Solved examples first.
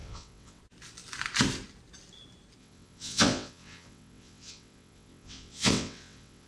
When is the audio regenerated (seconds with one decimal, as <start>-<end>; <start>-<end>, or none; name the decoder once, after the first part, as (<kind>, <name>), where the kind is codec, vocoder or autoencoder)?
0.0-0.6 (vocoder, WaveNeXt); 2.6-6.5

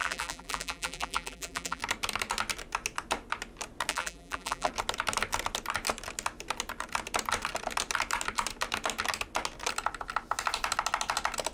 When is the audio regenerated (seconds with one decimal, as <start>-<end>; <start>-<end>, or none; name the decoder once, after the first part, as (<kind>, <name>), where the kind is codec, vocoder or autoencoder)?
0.0-1.8 (vocoder, BigVGAN v2); 3.9-4.7

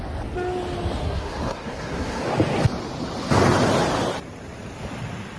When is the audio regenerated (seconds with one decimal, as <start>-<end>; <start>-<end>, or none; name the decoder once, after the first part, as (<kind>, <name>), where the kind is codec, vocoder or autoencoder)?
1.0-2.2 (codec, SNAC)